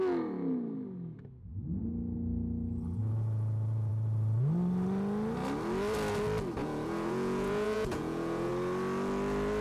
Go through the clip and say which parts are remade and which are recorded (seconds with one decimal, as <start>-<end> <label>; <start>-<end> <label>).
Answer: 0.0-3.0 recorded; 3.0-3.9 remade; 3.9-6.6 recorded; 6.6-8.5 remade; 8.5-9.6 recorded